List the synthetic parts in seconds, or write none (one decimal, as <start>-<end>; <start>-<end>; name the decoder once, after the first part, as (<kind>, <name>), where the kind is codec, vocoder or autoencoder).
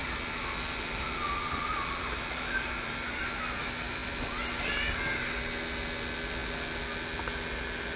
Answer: 0.0-3.2 (vocoder, BigVGAN v2)